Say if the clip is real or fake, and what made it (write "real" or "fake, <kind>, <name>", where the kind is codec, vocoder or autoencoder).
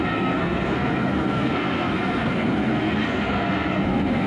fake, codec, SNAC